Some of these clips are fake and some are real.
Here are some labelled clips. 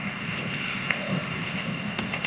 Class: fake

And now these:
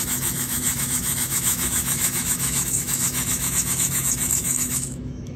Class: fake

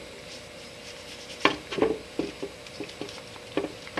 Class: fake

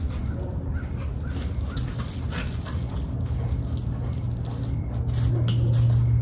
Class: real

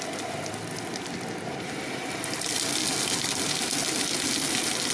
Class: real